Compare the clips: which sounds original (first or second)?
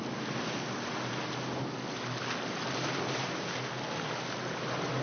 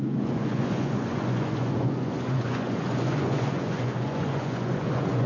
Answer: first